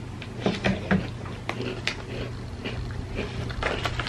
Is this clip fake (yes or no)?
no